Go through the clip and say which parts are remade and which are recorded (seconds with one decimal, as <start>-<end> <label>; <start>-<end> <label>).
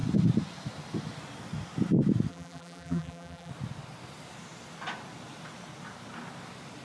0.0-2.3 recorded; 2.3-3.5 remade; 3.5-6.8 recorded